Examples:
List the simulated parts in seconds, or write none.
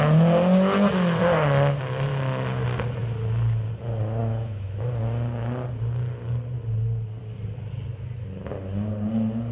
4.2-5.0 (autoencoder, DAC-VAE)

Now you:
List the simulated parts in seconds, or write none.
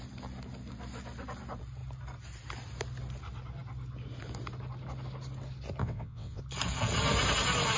5.8-6.4 (vocoder, WaveNeXt)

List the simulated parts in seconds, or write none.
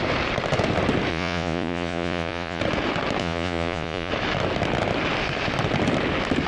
1.1-2.6 (vocoder, Vocos); 3.2-4.1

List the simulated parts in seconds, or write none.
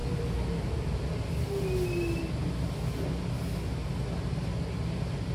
none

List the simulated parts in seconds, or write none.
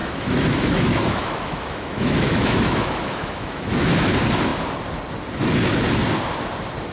0.0-4.1 (autoencoder, DAC-VAE)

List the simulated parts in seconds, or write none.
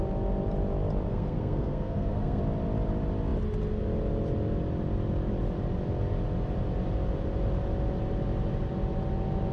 1.1-2.4 (codec, SNAC)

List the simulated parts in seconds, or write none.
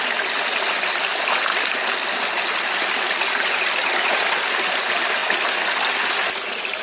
none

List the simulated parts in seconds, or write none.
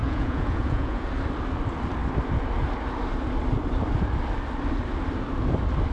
0.0-1.1 (vocoder, Vocos)